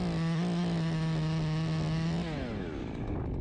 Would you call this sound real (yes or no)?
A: yes